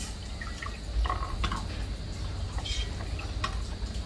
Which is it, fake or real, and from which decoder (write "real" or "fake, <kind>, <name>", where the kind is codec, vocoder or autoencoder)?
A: real